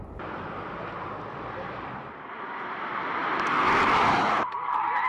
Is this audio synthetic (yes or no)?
yes